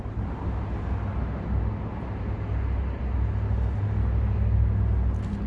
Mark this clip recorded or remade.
recorded